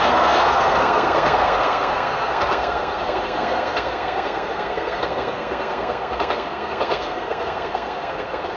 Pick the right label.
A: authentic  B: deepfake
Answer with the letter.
B